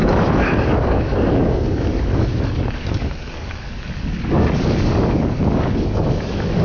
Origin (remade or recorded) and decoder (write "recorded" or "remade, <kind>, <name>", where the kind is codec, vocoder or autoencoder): remade, codec, DAC